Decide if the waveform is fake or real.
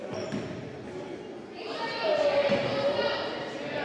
real